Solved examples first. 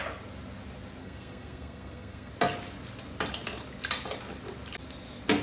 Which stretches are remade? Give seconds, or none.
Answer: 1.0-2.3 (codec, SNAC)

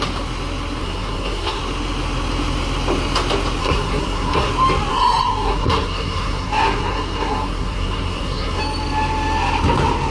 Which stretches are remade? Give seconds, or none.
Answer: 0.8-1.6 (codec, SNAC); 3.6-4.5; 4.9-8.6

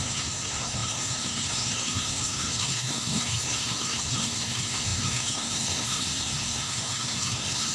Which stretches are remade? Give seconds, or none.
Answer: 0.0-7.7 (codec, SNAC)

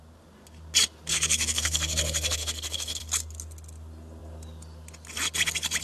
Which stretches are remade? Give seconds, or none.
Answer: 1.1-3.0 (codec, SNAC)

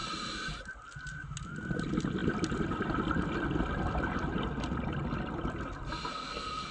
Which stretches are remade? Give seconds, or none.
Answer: 6.1-6.7 (codec, SNAC)

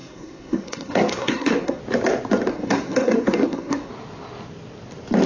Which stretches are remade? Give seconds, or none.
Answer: 0.0-1.8 (codec, SNAC); 2.5-3.9